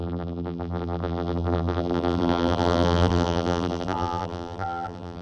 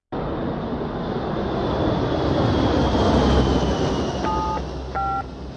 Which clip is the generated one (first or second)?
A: first